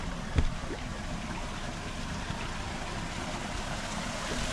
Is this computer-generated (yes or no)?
no